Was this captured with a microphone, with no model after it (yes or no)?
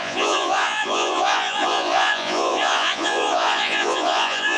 no